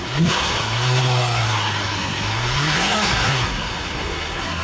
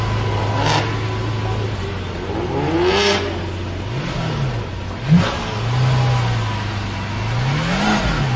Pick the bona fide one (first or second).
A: second